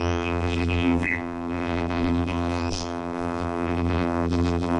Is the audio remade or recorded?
remade